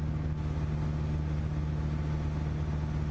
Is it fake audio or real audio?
real